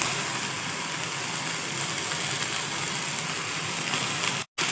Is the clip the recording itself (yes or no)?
yes